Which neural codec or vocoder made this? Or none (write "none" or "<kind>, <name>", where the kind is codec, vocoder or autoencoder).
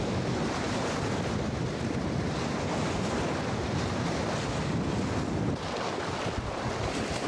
vocoder, BigVGAN v2